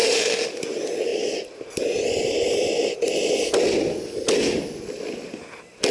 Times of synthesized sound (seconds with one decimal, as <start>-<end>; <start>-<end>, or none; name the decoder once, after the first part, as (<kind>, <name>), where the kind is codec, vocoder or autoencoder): 0.0-0.5 (autoencoder, DAC-VAE)